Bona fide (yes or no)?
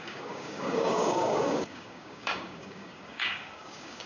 no